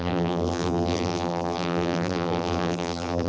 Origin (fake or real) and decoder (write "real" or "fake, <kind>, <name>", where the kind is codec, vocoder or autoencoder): fake, vocoder, BigVGAN v2